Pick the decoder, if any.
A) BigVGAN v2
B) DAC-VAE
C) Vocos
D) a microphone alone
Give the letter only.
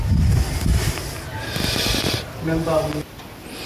D